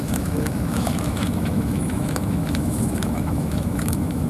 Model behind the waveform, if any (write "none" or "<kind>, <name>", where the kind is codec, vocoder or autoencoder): autoencoder, DAC-VAE